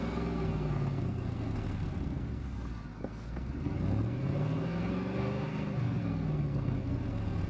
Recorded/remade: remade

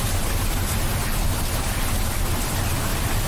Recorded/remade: recorded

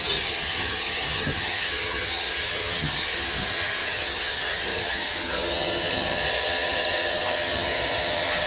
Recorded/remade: remade